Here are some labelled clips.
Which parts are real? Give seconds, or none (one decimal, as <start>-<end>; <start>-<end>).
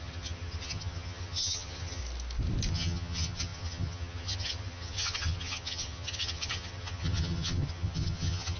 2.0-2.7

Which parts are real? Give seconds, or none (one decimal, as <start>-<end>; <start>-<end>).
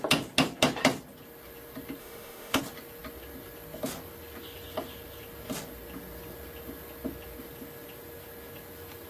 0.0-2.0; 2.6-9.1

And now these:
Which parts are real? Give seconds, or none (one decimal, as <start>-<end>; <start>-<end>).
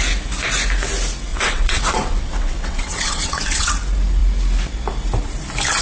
0.0-1.3; 3.7-5.8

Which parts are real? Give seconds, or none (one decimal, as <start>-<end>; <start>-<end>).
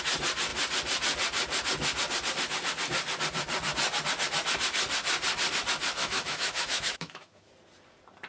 0.0-6.0; 7.5-8.3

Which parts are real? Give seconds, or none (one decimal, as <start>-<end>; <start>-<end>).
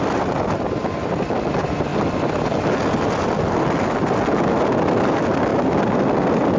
0.0-6.6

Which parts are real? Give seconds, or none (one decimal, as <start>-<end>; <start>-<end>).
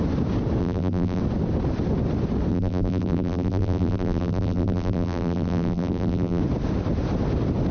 0.0-0.6; 1.2-2.5; 6.4-7.7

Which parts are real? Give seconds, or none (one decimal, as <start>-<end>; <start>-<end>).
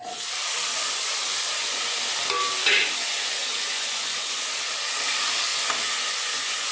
0.0-0.7; 2.0-3.0; 4.5-5.5